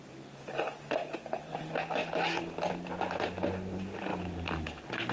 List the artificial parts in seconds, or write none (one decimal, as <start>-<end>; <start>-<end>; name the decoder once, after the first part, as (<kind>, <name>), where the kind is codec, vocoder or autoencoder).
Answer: 4.1-5.1 (vocoder, BigVGAN v2)